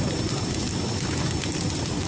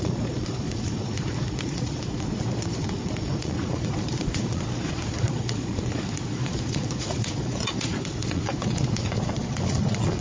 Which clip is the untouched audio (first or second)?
first